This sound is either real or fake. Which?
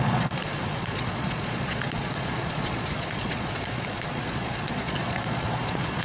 fake